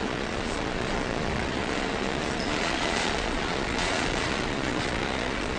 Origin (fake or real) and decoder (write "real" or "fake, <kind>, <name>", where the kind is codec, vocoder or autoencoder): fake, vocoder, Vocos